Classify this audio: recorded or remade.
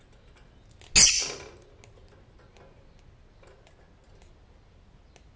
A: recorded